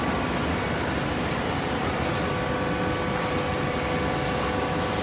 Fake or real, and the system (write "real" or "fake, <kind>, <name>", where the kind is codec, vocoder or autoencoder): real